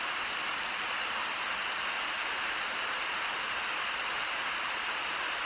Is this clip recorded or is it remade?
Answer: recorded